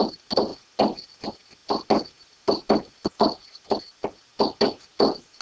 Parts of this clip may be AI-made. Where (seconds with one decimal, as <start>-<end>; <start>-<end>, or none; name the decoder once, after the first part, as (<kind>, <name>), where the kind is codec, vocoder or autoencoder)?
none